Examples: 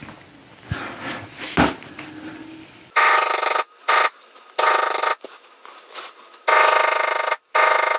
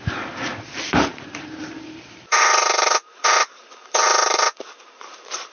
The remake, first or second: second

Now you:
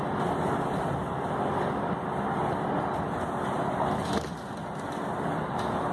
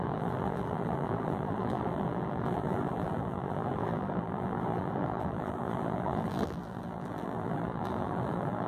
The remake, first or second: second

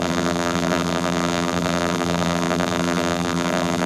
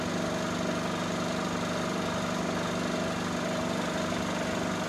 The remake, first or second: first